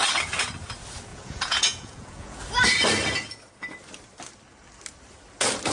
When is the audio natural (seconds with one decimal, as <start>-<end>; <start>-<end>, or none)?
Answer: 0.0-1.1; 2.4-5.7